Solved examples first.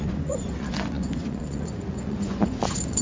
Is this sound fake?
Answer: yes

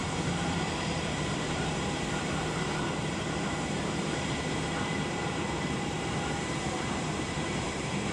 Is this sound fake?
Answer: yes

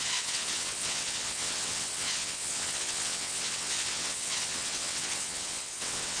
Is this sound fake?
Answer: yes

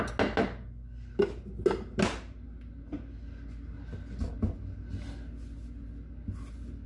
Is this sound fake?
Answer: no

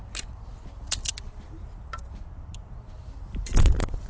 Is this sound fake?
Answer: no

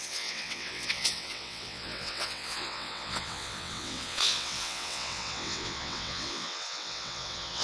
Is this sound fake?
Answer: yes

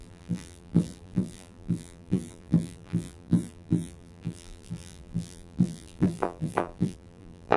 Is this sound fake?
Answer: yes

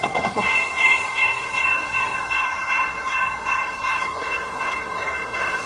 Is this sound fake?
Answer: yes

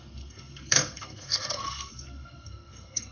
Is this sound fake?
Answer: yes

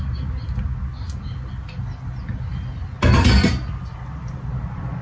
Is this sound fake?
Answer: no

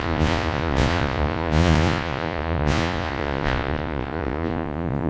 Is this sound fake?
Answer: yes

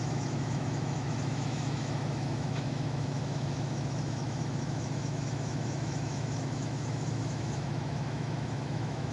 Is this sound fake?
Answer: yes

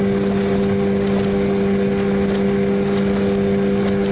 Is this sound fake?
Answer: no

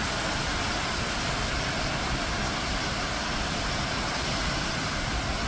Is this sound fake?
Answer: no